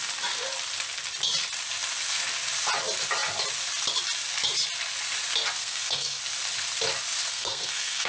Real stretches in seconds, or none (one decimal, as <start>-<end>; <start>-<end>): 0.0-5.6; 6.2-7.3

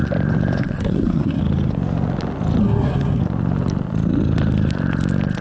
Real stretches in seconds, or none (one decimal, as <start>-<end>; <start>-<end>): 0.0-0.6; 1.4-2.6; 3.2-5.4

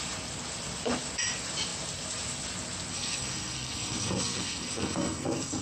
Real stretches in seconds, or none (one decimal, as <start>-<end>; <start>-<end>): 0.0-2.9